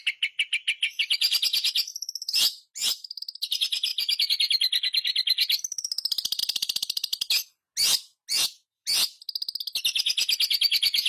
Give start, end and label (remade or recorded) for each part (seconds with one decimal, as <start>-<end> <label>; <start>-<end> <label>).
0.0-11.1 recorded

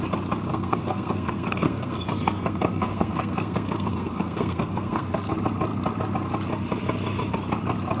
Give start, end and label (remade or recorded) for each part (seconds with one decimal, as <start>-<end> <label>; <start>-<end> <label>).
0.0-0.5 recorded; 0.5-5.3 remade; 5.3-8.0 recorded

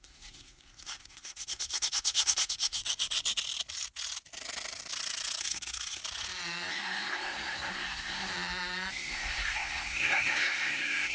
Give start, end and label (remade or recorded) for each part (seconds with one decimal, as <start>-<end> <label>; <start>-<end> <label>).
0.0-2.8 remade; 2.8-5.4 recorded; 5.4-6.0 remade; 6.0-6.7 recorded; 6.7-8.3 remade; 8.3-8.9 recorded; 8.9-11.1 remade